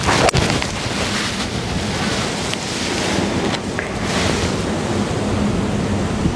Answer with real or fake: real